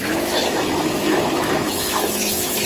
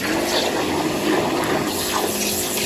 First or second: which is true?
second